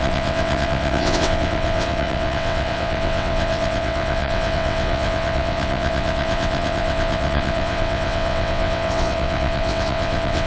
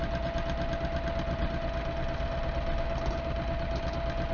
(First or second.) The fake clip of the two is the first